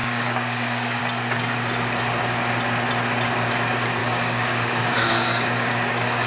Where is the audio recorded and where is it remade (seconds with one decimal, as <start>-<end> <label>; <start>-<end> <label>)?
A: 0.0-1.0 remade; 1.0-4.0 recorded; 4.0-6.3 remade

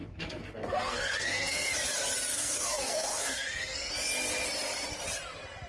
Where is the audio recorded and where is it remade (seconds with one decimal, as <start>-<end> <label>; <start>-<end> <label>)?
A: 0.0-1.7 remade; 1.7-2.3 recorded; 2.3-3.9 remade; 3.9-5.7 recorded

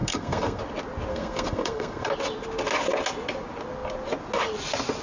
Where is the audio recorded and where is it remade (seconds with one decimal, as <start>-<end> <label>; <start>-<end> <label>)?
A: 0.0-0.6 remade; 0.6-1.1 recorded; 1.1-2.1 remade; 2.1-5.0 recorded

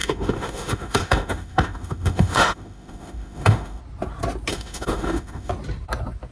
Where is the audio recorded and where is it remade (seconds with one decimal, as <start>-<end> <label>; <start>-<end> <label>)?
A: 0.0-3.8 remade; 3.8-4.5 recorded; 4.5-5.5 remade; 5.5-6.3 recorded

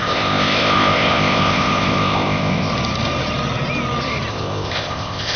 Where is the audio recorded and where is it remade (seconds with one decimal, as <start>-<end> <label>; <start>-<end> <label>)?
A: 0.0-2.7 remade; 2.7-4.3 recorded; 4.3-5.4 remade